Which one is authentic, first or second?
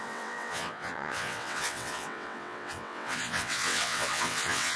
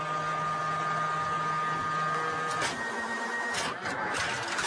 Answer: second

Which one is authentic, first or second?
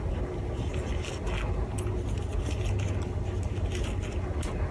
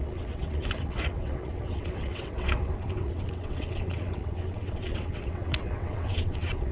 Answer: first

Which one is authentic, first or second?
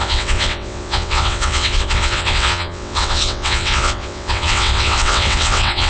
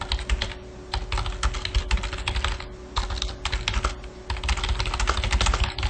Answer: second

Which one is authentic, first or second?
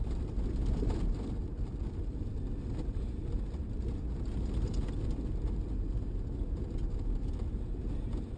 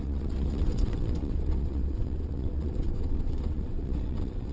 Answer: first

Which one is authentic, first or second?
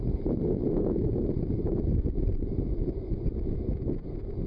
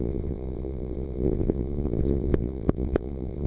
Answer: first